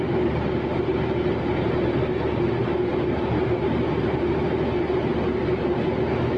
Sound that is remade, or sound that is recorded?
recorded